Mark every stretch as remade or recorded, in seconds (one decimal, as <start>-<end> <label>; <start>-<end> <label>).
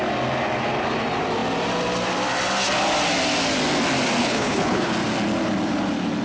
0.0-4.2 recorded; 4.2-4.9 remade; 4.9-6.2 recorded